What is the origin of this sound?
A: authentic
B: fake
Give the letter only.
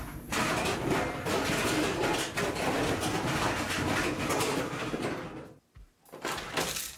A